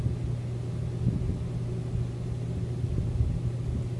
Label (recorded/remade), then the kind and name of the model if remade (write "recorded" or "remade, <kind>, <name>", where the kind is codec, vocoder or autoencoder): recorded